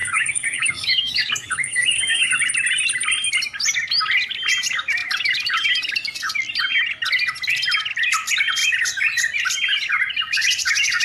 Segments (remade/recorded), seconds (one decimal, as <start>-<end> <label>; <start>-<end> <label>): 0.0-2.3 remade; 2.3-11.0 recorded